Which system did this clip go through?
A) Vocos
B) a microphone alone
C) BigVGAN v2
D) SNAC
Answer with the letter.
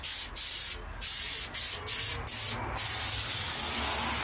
B